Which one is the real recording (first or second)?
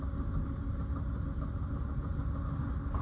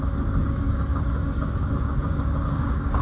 first